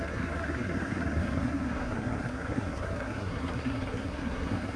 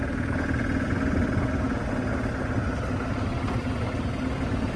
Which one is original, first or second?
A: second